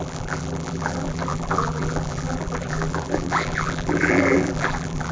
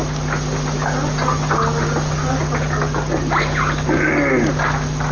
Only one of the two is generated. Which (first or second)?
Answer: first